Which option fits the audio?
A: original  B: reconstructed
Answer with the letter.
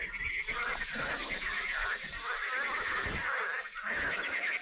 A